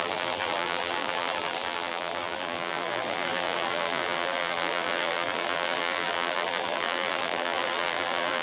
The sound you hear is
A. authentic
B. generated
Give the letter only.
B